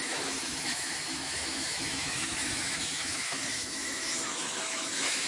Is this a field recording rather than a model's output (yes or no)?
no